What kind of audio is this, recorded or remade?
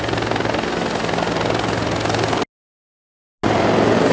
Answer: recorded